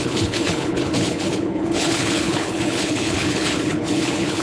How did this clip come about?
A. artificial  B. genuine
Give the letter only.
A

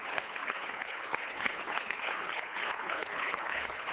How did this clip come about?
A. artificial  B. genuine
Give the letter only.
A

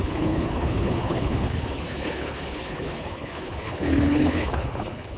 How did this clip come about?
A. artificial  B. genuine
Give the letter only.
A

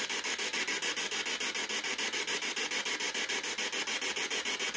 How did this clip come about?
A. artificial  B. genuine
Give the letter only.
B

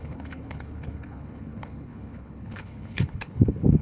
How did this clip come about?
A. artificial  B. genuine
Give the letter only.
A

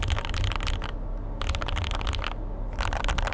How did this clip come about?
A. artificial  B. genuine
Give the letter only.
B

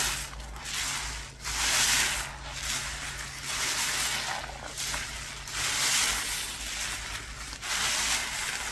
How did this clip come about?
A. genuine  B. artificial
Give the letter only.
A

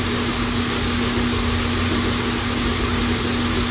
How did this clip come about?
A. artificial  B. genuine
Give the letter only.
B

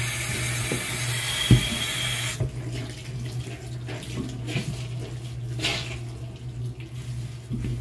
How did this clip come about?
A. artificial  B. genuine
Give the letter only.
B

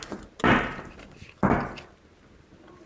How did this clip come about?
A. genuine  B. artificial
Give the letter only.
A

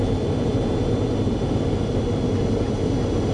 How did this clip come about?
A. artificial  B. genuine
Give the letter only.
B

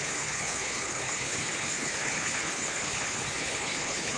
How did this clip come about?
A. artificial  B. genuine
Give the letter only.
A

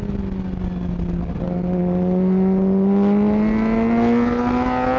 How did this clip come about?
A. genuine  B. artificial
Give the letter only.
A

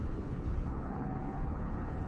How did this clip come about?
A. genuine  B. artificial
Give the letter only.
B